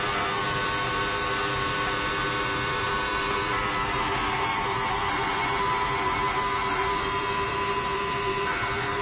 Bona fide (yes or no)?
no